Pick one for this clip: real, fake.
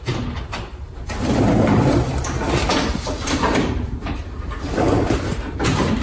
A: fake